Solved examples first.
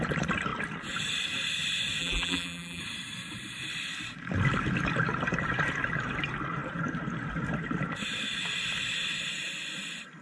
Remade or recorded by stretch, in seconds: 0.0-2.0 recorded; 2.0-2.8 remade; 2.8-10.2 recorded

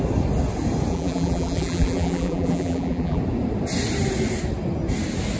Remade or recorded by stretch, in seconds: 0.0-0.9 recorded; 0.9-3.2 remade; 3.2-5.4 recorded

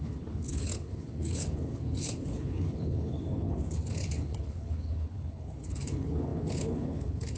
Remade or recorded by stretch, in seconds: 0.0-7.4 remade

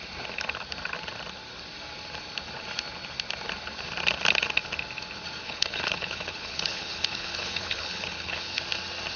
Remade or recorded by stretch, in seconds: 0.0-5.4 recorded; 5.4-8.6 remade; 8.6-9.2 recorded

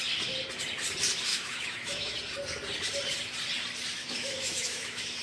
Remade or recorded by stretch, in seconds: 0.0-1.3 recorded; 1.3-2.2 remade; 2.2-4.0 recorded; 4.0-5.2 remade

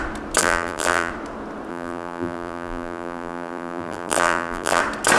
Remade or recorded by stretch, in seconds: 0.0-0.4 recorded; 0.4-1.1 remade; 1.1-1.7 recorded; 1.7-4.8 remade; 4.8-5.2 recorded

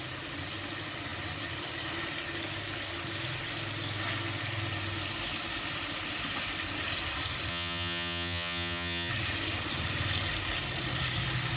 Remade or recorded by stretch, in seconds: 0.0-7.5 recorded; 7.5-9.1 remade; 9.1-11.6 recorded